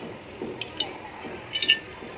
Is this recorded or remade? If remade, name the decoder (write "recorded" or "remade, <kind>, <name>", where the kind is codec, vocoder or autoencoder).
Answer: recorded